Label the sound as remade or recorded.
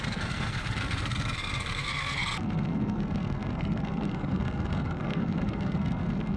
remade